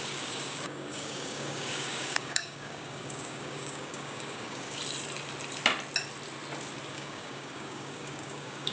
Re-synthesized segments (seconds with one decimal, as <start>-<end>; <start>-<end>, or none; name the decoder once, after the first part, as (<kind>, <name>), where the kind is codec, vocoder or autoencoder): 0.0-4.8 (codec, DAC); 6.9-8.7